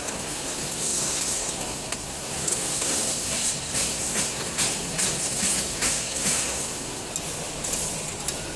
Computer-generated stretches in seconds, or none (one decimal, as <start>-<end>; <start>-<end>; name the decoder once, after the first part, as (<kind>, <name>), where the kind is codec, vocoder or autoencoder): 0.0-7.1 (codec, SNAC)